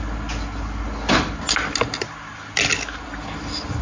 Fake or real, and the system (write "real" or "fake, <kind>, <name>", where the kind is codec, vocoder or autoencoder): real